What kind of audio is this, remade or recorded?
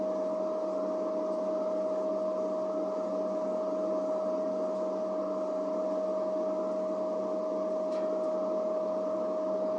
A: recorded